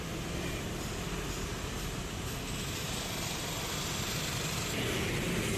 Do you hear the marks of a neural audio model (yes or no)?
no